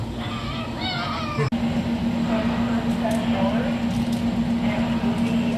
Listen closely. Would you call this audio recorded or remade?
recorded